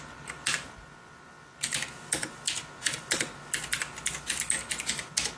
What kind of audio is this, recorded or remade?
recorded